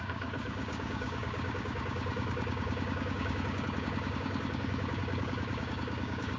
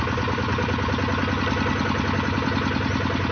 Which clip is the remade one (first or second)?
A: first